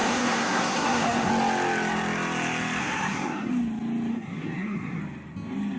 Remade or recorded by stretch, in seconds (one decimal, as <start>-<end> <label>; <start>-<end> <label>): 0.0-1.3 remade; 1.3-2.8 recorded; 2.8-3.5 remade; 3.5-4.1 recorded; 4.1-5.0 remade; 5.0-5.8 recorded